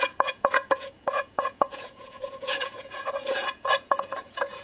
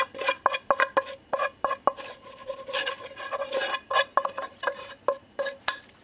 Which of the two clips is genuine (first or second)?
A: second